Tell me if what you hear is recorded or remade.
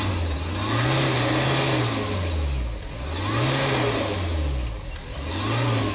recorded